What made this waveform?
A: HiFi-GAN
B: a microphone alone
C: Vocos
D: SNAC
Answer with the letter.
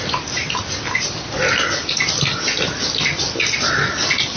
B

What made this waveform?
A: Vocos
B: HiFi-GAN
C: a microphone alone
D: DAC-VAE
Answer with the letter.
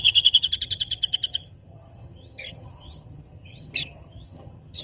B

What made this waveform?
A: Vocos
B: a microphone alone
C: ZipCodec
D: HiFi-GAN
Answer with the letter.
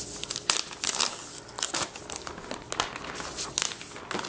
B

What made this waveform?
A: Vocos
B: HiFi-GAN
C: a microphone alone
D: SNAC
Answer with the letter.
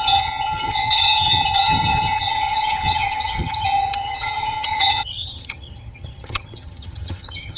B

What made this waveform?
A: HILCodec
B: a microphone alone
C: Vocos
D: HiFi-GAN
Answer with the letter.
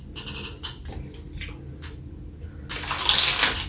B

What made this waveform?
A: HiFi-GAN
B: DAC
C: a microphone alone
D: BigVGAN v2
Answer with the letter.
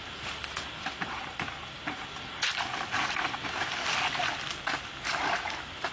C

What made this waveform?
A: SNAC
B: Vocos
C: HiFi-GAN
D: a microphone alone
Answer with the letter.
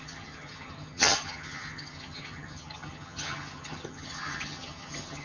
C